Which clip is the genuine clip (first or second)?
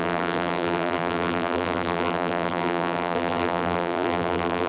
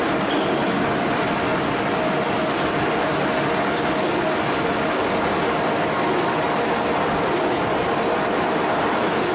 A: second